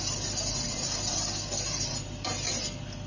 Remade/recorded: recorded